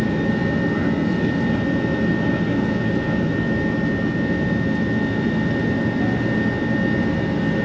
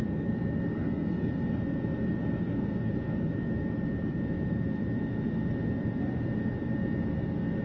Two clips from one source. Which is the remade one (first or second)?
second